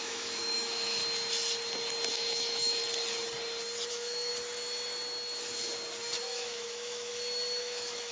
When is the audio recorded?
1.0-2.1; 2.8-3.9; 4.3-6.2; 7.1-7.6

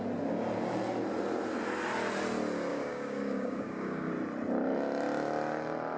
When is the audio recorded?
0.0-2.7; 4.1-6.0